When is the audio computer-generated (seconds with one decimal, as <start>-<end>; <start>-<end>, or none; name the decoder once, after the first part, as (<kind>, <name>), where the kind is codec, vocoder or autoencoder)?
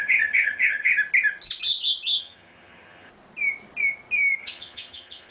0.0-0.9 (vocoder, HiFi-GAN); 2.2-3.1; 4.4-5.3